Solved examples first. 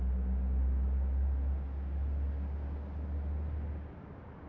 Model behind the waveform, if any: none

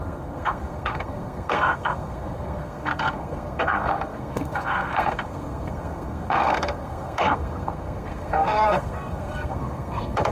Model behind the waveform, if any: codec, SNAC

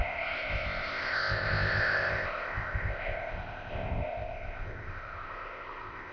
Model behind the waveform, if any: codec, ZipCodec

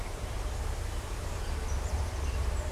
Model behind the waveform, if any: vocoder, BigVGAN v2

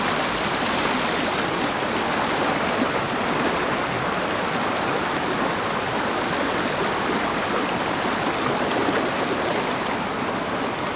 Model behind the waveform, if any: none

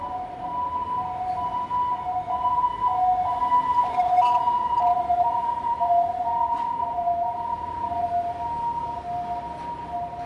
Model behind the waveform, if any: none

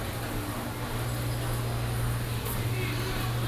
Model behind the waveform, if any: none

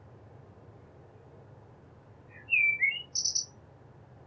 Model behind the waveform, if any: none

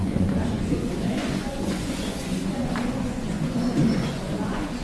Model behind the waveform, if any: vocoder, Vocos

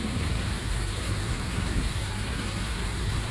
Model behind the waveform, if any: codec, SNAC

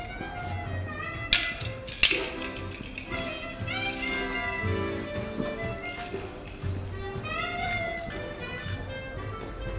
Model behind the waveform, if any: none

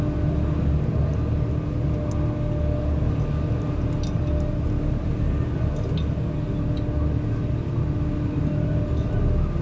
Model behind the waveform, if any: none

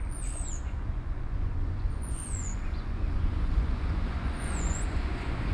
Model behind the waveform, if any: vocoder, Vocos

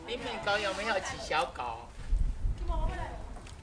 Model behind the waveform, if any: none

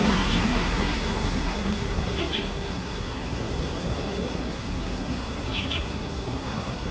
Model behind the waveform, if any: codec, SNAC